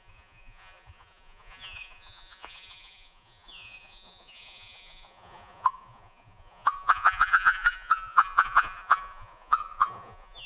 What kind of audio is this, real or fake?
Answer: fake